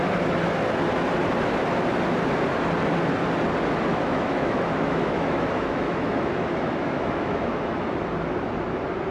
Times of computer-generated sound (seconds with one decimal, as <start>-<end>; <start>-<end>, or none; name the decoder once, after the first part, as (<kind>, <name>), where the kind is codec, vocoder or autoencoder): 3.9-8.0 (autoencoder, DAC-VAE)